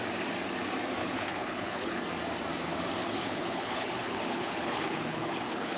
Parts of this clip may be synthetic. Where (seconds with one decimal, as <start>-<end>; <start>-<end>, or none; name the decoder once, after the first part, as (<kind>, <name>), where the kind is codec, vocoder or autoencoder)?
1.0-2.0 (codec, HILCodec); 3.0-5.8